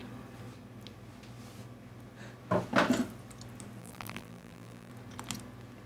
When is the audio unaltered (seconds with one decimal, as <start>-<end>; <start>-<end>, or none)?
0.0-3.8; 4.9-5.9